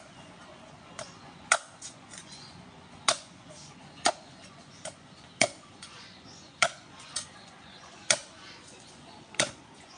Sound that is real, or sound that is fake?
fake